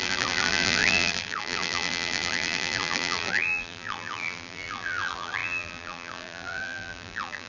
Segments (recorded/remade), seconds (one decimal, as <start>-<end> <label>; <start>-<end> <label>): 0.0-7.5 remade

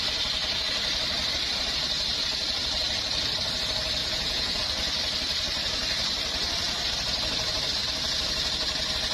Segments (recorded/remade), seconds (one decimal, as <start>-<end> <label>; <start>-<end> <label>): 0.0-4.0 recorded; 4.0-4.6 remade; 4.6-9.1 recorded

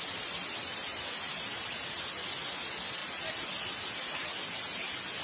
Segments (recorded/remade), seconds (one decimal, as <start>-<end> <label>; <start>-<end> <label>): 0.0-5.2 recorded